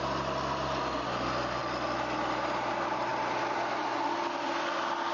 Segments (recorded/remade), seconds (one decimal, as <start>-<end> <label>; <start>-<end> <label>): 0.0-5.1 recorded